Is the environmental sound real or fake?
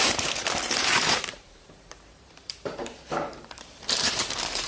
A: fake